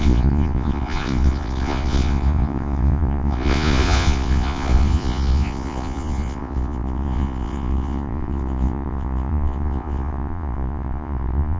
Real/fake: fake